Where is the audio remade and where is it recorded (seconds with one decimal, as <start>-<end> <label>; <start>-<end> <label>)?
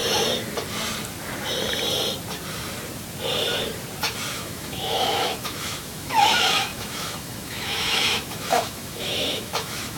0.0-4.3 recorded; 4.3-10.0 remade